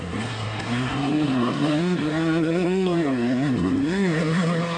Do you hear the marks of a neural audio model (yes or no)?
yes